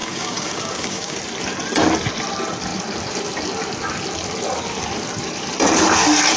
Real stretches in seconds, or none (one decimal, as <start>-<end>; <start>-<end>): 1.2-6.4